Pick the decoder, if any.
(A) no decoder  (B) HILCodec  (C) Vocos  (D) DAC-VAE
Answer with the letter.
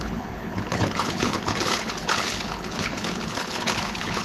B